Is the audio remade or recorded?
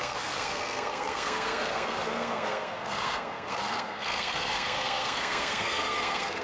remade